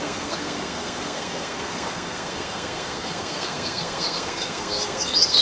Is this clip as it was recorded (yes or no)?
no